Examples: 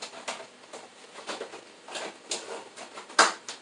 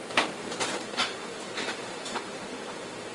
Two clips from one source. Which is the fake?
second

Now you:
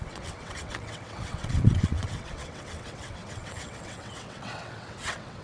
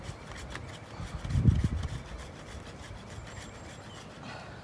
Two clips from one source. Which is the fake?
first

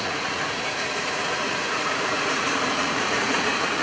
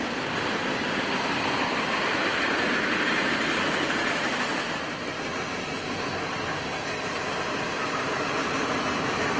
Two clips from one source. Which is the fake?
first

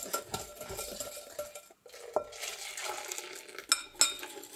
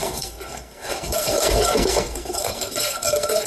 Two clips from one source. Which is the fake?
second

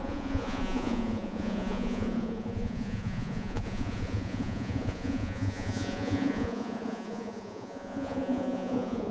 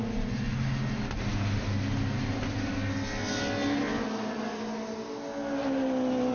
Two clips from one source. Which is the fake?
first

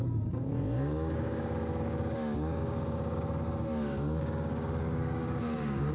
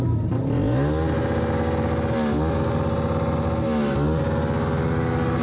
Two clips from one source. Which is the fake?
first